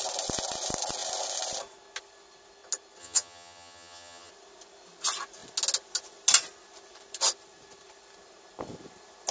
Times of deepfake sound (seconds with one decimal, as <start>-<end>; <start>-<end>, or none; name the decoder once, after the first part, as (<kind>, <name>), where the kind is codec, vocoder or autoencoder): 3.0-4.3 (vocoder, HiFi-GAN)